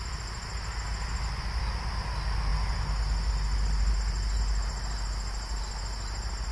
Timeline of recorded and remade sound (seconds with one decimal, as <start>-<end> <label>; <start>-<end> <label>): 0.0-6.5 recorded